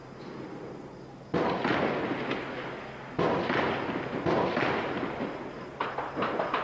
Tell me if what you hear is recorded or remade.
recorded